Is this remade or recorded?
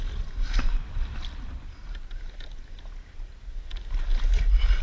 recorded